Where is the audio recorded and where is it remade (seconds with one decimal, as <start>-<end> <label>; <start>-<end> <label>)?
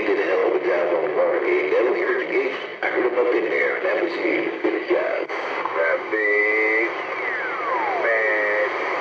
0.0-4.3 recorded; 4.3-6.4 remade; 6.4-9.0 recorded